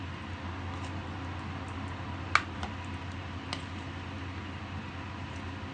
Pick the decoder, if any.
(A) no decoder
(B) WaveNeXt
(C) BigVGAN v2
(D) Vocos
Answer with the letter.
A